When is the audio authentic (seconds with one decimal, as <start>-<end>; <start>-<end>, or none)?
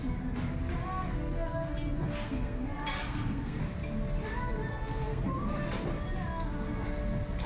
0.0-1.1; 3.6-4.7; 5.5-7.5